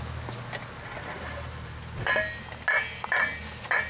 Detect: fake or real real